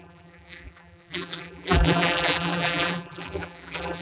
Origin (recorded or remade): remade